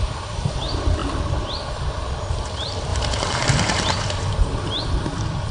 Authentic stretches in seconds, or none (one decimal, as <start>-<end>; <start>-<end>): 0.0-5.5